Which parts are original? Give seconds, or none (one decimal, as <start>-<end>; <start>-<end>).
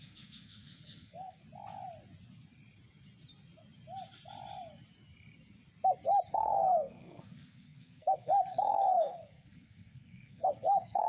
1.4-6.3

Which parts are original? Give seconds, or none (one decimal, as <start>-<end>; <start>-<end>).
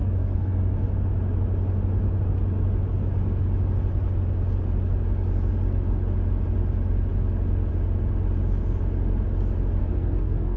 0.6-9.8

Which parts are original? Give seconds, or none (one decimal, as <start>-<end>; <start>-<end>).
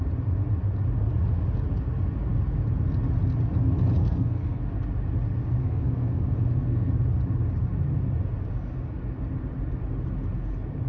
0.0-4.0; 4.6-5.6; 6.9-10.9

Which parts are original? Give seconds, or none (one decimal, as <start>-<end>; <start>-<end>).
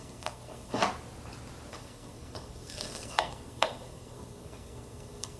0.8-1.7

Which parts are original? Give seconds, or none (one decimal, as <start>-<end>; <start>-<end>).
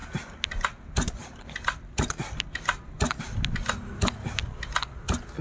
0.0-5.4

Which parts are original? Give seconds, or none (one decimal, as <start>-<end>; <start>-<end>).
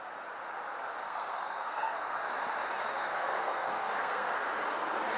0.0-1.0; 2.3-3.0; 4.3-5.2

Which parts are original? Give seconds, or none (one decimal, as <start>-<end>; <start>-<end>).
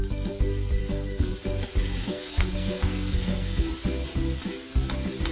0.0-0.8; 1.3-2.0; 3.7-5.3